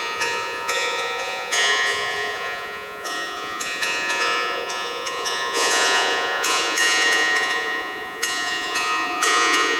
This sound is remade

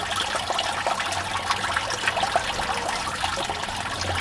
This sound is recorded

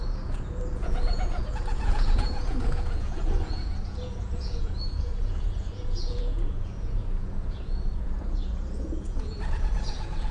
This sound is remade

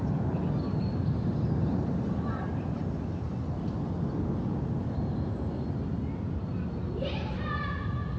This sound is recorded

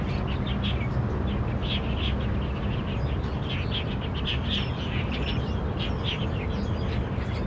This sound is recorded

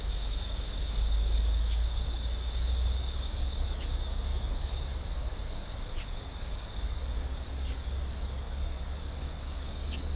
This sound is remade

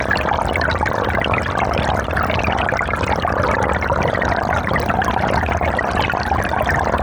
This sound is recorded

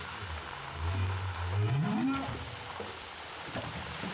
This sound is recorded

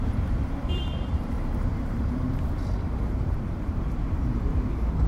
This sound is remade